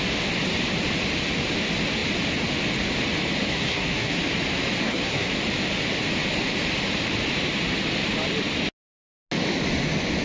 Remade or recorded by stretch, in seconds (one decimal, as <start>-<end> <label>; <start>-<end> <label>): 0.0-3.5 recorded; 3.5-4.2 remade; 4.2-4.8 recorded; 4.8-5.3 remade; 5.3-10.2 recorded